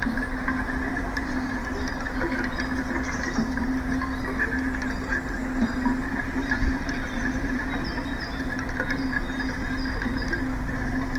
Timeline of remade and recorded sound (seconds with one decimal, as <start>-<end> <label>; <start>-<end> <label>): 0.0-0.9 recorded; 0.9-1.5 remade; 1.5-11.2 recorded